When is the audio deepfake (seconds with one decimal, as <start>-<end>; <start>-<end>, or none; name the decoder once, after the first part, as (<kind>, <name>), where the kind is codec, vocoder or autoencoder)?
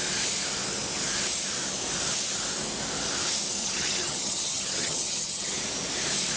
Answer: 3.6-5.6 (vocoder, HiFi-GAN)